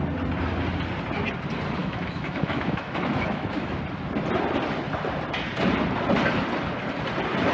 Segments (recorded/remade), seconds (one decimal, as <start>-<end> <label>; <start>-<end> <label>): 0.0-1.8 recorded; 1.8-3.8 remade; 3.8-7.5 recorded